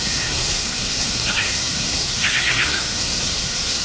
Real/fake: fake